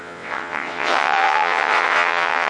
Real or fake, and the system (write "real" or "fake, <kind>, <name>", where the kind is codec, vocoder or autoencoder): fake, vocoder, WaveNeXt